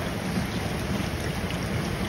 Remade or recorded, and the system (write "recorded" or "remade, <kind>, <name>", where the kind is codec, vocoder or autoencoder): recorded